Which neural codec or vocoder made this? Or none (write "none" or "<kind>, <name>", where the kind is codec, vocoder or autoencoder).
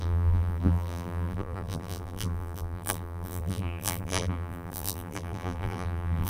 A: vocoder, BigVGAN v2